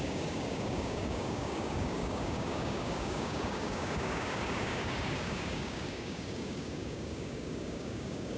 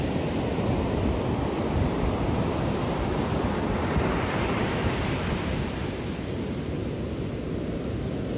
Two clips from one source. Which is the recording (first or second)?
second